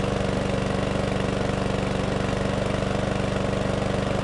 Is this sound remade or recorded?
recorded